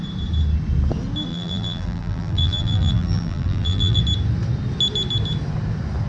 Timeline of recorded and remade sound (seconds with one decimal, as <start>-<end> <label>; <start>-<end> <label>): 0.0-1.3 recorded; 1.3-4.0 remade; 4.0-6.1 recorded